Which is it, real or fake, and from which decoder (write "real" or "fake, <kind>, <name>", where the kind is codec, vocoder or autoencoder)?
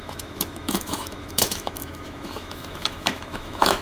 fake, autoencoder, DAC-VAE